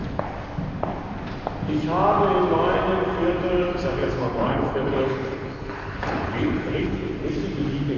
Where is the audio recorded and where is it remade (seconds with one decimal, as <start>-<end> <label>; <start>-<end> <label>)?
0.0-4.0 recorded; 4.0-7.1 remade; 7.1-8.0 recorded